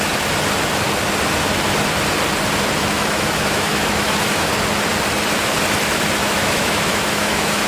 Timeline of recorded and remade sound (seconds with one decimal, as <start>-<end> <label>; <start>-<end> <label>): 0.0-2.8 recorded; 2.8-4.5 remade; 4.5-6.2 recorded; 6.2-7.7 remade